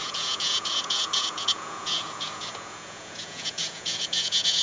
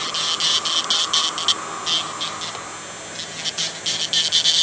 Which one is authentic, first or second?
second